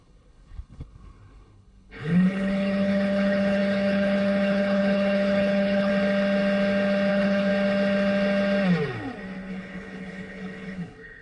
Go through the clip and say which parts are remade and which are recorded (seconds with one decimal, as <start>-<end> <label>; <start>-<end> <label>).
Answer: 0.0-5.9 remade; 5.9-7.1 recorded; 7.1-7.5 remade; 7.5-9.5 recorded; 9.5-11.2 remade